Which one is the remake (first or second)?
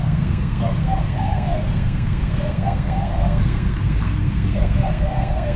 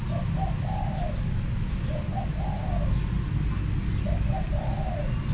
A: first